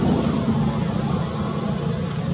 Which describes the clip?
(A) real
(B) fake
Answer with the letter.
A